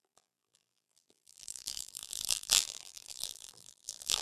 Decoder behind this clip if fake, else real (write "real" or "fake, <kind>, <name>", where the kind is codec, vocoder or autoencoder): fake, vocoder, BigVGAN v2